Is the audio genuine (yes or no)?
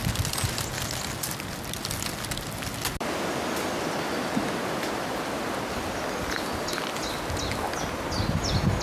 yes